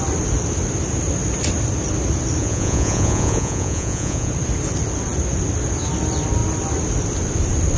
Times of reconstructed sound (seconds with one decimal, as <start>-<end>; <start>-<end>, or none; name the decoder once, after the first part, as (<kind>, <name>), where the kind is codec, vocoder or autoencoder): 2.4-4.3 (vocoder, Vocos)